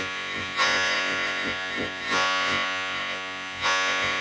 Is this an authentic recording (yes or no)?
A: no